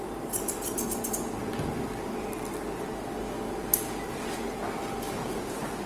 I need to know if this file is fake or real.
real